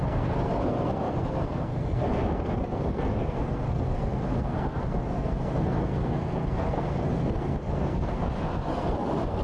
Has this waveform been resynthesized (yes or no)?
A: yes